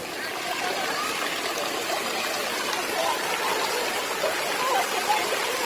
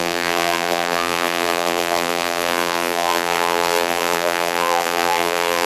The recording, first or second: first